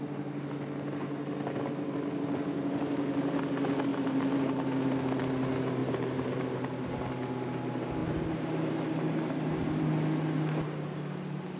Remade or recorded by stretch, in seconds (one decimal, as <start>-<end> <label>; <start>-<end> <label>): 0.0-3.9 recorded; 3.9-4.4 remade; 4.4-5.8 recorded; 5.8-6.4 remade; 6.4-8.0 recorded; 8.0-9.8 remade; 9.8-11.6 recorded